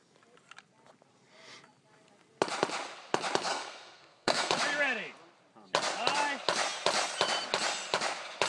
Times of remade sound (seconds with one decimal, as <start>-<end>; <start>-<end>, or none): 3.5-4.5